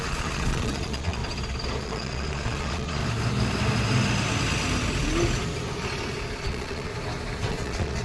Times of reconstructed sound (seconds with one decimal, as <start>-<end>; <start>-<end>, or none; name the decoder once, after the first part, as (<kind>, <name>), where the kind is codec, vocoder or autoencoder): 0.0-1.2 (vocoder, Vocos); 1.8-3.0; 6.4-6.9; 7.5-8.0